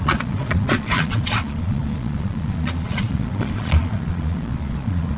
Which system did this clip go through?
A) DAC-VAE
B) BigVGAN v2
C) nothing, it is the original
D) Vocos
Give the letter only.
D